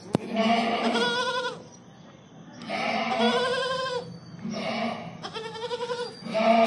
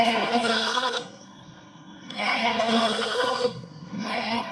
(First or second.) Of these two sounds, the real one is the first